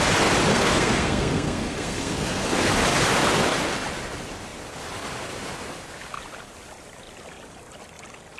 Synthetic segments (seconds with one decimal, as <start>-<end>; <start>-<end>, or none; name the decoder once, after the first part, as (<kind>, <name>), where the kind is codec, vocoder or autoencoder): 0.5-2.7 (codec, SNAC)